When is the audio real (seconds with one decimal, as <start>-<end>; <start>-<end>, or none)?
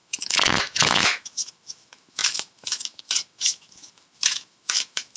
none